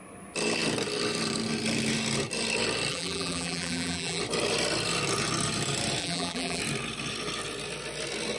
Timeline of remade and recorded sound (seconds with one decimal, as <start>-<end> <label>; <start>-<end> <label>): 0.0-2.9 recorded; 2.9-4.2 remade; 4.2-6.0 recorded; 6.0-6.6 remade; 6.6-8.4 recorded